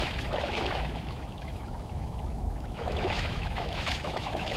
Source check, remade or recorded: remade